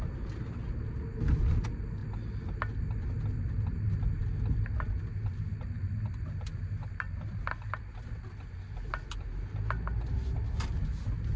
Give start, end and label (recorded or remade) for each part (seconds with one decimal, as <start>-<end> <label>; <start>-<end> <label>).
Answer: 0.0-11.4 recorded